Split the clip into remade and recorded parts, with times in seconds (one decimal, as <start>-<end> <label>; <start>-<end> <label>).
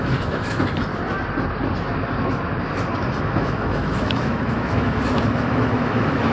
0.0-0.9 remade; 0.9-3.2 recorded; 3.2-6.3 remade